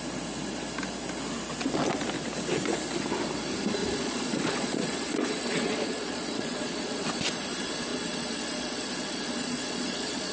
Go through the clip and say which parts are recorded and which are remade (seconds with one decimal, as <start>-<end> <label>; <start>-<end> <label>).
0.0-3.8 recorded; 3.8-7.1 remade; 7.1-7.9 recorded; 7.9-10.3 remade

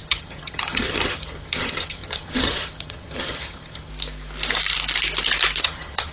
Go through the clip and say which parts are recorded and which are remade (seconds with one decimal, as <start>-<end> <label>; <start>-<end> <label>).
0.0-3.9 remade; 3.9-5.6 recorded; 5.6-6.1 remade

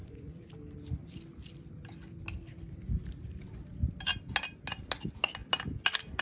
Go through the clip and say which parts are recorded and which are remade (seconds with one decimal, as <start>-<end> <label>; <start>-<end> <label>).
0.0-0.5 remade; 0.5-6.2 recorded